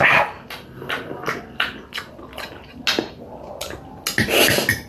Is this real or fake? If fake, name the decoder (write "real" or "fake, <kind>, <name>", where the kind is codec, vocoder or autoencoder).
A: real